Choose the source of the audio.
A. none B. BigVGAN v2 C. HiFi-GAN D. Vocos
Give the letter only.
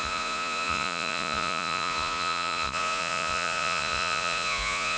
D